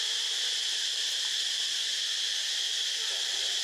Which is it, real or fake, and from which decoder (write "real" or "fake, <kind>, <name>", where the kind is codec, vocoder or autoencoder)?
real